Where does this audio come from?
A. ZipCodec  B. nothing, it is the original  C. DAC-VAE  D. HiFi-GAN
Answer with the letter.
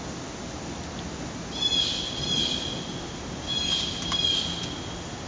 B